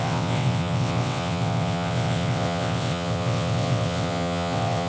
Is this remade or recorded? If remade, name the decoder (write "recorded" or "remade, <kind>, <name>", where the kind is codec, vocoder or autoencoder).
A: remade, vocoder, WaveNeXt